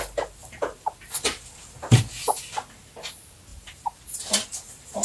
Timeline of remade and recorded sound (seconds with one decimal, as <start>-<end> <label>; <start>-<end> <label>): 0.0-3.5 recorded; 3.5-4.0 remade; 4.0-5.0 recorded